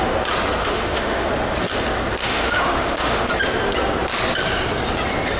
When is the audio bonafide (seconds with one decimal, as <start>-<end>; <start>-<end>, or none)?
0.0-0.6; 1.3-2.2; 3.3-5.4